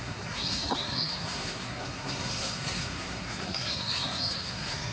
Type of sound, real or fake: fake